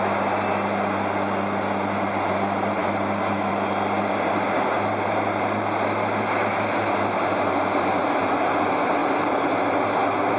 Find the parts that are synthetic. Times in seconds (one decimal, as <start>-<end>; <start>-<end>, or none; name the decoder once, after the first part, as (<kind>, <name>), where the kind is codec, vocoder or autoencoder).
2.8-3.5 (vocoder, BigVGAN v2)